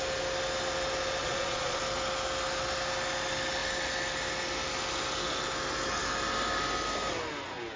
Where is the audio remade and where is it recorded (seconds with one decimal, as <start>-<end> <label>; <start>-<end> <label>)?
0.0-1.2 recorded; 1.2-1.8 remade; 1.8-7.8 recorded